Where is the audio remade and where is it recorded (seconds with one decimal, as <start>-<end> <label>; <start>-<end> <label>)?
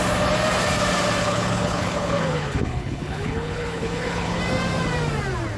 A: 0.0-1.2 recorded; 1.2-4.4 remade; 4.4-5.6 recorded